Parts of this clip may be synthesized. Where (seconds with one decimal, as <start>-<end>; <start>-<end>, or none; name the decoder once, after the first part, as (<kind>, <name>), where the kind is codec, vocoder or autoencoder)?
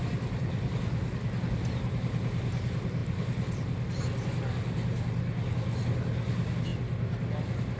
none